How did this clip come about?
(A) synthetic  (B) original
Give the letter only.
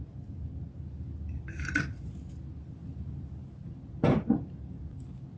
B